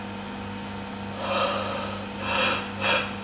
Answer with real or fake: real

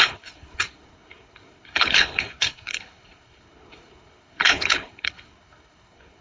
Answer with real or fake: fake